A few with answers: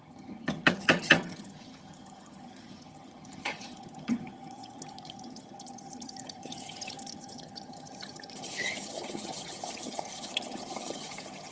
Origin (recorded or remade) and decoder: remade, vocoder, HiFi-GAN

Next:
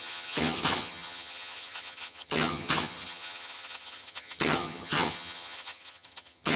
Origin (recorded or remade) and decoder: remade, vocoder, HiFi-GAN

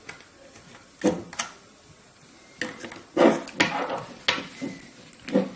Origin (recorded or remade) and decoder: recorded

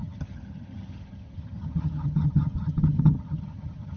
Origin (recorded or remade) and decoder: remade, vocoder, HiFi-GAN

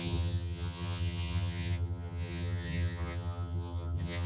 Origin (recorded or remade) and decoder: remade, vocoder, HiFi-GAN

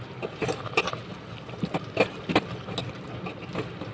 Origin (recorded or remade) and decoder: recorded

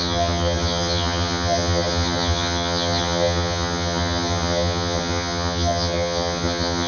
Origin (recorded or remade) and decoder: remade, vocoder, HiFi-GAN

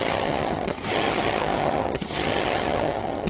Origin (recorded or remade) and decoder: remade, vocoder, HiFi-GAN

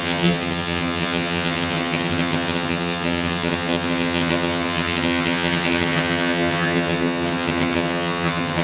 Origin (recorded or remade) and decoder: remade, vocoder, HiFi-GAN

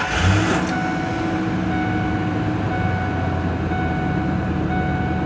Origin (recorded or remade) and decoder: recorded